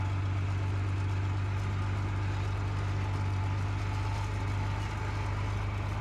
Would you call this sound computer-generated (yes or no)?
no